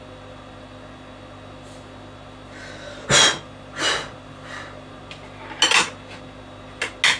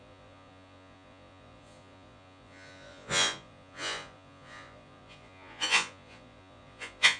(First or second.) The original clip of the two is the first